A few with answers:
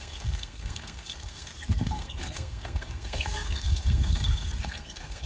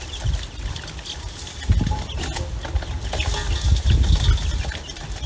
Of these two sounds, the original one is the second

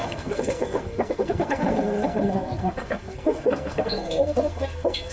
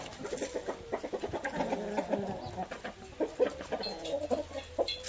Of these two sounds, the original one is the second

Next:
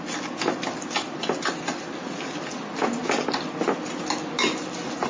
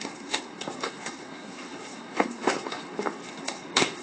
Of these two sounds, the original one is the first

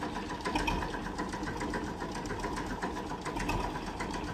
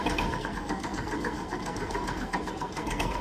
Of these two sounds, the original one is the first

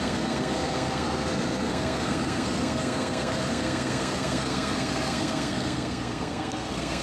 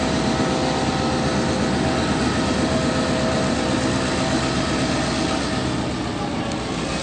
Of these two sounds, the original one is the second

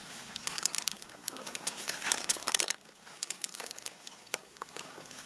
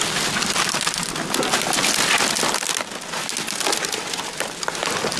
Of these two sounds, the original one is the second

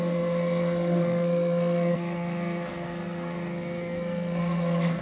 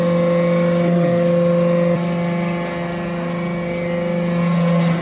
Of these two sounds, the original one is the second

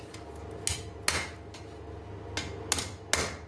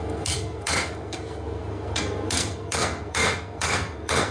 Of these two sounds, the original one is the first